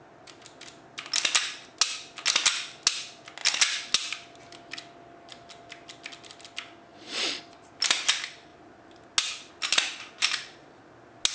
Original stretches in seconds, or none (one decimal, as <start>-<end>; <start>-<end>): 0.0-6.9; 7.4-11.3